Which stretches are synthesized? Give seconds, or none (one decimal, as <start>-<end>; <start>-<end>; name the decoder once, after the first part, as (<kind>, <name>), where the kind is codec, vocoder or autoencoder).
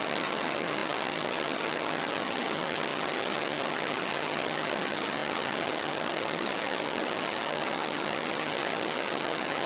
0.0-9.7 (vocoder, HiFi-GAN)